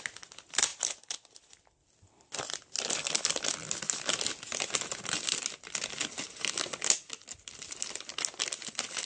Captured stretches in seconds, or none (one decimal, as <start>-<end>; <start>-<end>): 0.0-9.1